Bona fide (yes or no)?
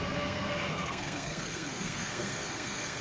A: no